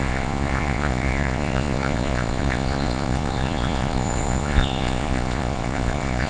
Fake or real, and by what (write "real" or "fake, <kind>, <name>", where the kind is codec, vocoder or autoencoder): fake, vocoder, Vocos